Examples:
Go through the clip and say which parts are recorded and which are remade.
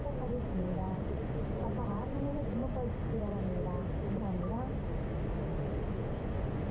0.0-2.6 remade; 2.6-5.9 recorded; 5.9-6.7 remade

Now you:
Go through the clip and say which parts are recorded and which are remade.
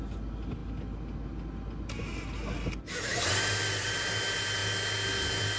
0.0-5.6 recorded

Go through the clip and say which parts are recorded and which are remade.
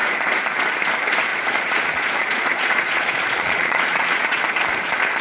0.0-1.3 recorded; 1.3-4.4 remade; 4.4-5.2 recorded